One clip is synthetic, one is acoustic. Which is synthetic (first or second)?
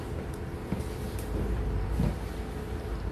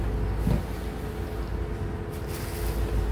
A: first